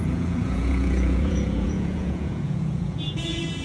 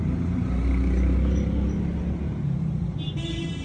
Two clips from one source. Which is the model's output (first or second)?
first